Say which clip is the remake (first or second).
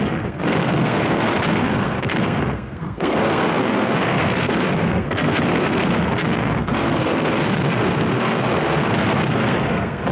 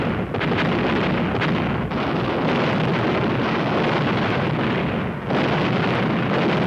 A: first